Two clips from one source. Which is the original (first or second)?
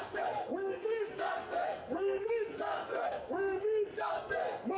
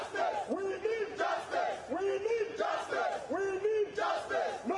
second